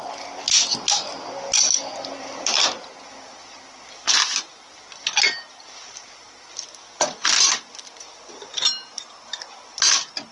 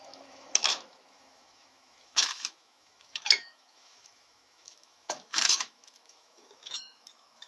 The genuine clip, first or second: first